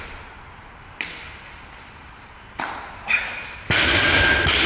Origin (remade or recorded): recorded